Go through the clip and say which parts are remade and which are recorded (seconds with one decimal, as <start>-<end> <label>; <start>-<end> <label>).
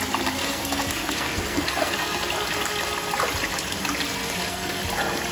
0.0-0.4 recorded; 0.4-2.3 remade; 2.3-4.2 recorded; 4.2-4.8 remade; 4.8-5.3 recorded